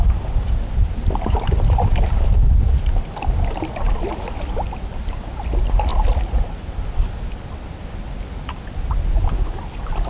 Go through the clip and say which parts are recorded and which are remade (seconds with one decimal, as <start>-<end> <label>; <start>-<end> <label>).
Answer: 0.0-10.1 recorded